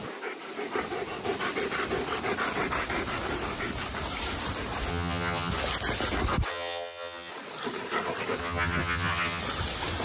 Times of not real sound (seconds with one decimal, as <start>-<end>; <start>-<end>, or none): 4.9-5.5; 6.5-7.3; 8.4-9.4